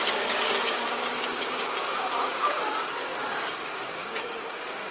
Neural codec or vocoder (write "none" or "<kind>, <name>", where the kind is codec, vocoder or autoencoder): codec, DAC